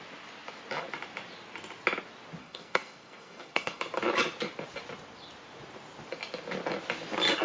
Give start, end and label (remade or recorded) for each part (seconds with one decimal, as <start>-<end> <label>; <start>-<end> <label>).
0.0-2.4 recorded; 2.4-3.8 remade; 3.8-7.4 recorded